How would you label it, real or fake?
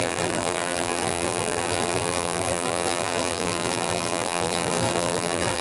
fake